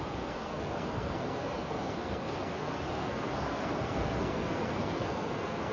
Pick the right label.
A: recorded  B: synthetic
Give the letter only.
B